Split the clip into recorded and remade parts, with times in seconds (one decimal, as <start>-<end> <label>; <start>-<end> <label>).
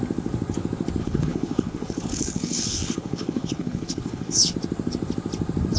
0.0-1.0 recorded; 1.0-4.5 remade; 4.5-5.8 recorded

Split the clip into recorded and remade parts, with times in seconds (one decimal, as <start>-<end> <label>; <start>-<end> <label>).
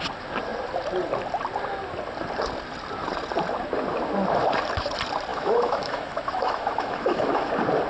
0.0-5.3 recorded; 5.3-7.5 remade; 7.5-7.9 recorded